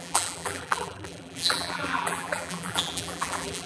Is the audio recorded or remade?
remade